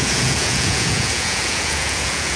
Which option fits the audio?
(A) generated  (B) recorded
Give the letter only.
A